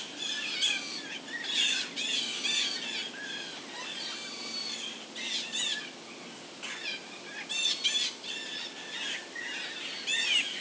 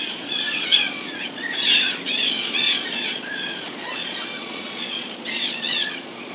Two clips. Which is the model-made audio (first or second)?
second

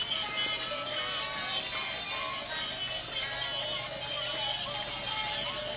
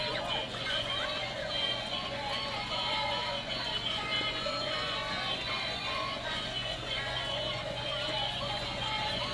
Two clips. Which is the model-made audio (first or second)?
second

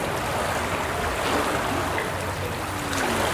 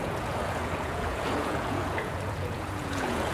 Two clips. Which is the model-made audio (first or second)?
second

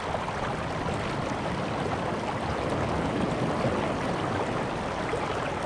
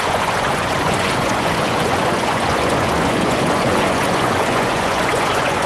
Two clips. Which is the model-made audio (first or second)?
second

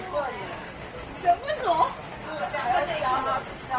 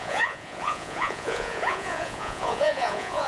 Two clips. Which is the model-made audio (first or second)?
second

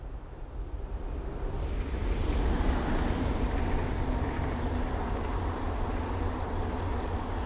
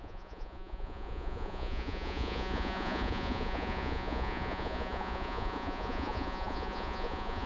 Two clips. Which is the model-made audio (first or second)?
second